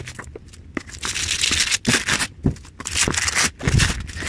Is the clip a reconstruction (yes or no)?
no